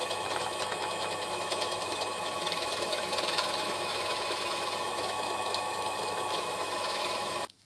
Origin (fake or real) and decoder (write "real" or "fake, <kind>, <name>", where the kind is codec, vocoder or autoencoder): fake, autoencoder, DAC-VAE